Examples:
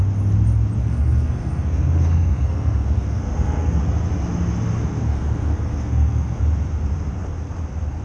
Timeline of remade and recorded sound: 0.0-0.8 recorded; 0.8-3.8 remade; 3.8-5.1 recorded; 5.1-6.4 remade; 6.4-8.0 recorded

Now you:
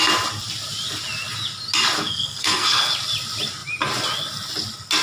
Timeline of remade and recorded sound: 0.0-2.0 recorded; 2.0-2.9 remade; 2.9-5.0 recorded